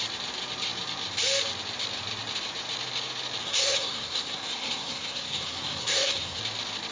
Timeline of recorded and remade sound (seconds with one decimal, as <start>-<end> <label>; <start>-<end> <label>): 0.0-3.4 recorded; 3.4-6.4 remade; 6.4-6.9 recorded